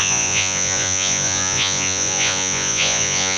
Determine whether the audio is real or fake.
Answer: fake